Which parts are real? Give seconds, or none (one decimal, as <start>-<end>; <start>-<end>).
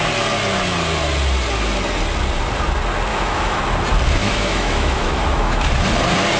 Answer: 0.0-3.1; 3.6-4.2; 5.7-6.4